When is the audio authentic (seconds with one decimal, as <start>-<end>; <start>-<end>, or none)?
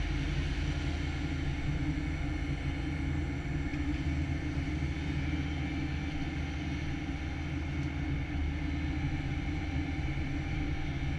0.0-9.3; 10.6-11.2